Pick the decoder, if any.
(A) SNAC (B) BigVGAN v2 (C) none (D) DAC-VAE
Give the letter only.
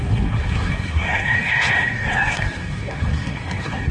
A